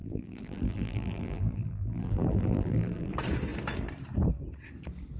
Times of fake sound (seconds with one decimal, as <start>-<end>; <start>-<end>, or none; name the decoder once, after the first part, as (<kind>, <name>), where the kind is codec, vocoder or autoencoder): 0.0-3.1 (vocoder, BigVGAN v2)

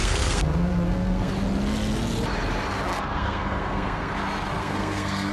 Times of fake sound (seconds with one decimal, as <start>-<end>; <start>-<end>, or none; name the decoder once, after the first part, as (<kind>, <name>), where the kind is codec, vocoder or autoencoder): 0.0-1.3 (codec, SNAC); 2.9-4.1; 4.6-5.3

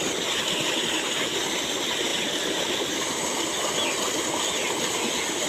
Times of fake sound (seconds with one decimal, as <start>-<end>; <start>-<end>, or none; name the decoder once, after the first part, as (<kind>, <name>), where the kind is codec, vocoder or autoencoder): none

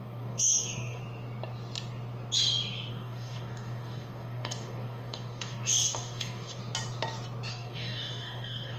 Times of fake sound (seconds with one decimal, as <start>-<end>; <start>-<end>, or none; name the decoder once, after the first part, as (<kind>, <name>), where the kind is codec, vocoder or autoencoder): 0.0-1.0 (codec, DAC); 2.9-6.6; 7.5-8.8

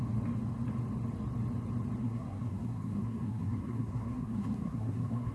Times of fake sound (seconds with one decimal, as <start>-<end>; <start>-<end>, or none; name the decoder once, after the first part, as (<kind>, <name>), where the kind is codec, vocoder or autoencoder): 2.0-5.3 (codec, SNAC)